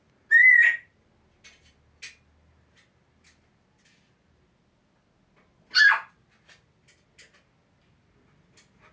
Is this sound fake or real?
real